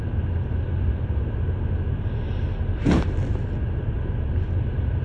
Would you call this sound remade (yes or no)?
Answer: no